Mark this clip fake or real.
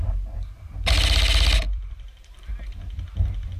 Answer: fake